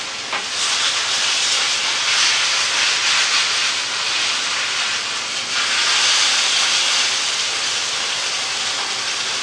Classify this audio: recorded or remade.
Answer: recorded